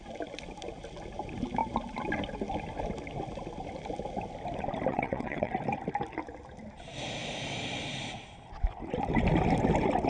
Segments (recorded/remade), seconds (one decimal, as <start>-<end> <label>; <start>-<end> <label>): 0.0-4.9 recorded; 4.9-5.5 remade; 5.5-10.1 recorded